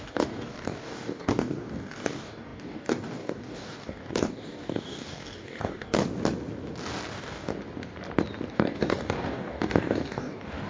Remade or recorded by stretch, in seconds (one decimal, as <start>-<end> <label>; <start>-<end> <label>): 0.0-6.0 remade; 6.0-7.1 recorded; 7.1-7.5 remade; 7.5-8.5 recorded; 8.5-10.7 remade